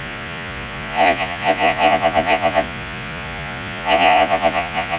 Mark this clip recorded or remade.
remade